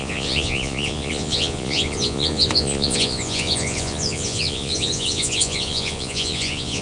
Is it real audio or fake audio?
fake